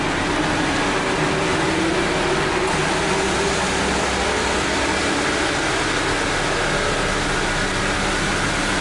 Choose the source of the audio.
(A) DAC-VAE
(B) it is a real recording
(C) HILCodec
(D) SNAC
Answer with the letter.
B